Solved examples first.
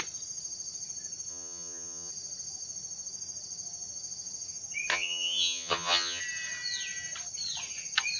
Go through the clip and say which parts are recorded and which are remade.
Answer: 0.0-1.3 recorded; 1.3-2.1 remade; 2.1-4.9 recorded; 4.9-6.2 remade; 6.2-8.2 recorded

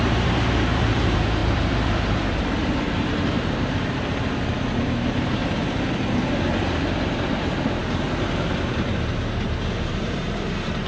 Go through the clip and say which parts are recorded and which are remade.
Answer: 0.0-5.4 remade; 5.4-6.7 recorded; 6.7-10.9 remade